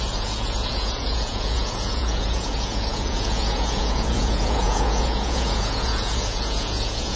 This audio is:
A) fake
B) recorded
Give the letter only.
A